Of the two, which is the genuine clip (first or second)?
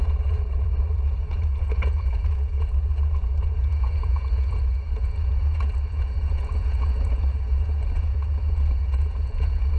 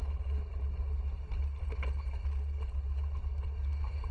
second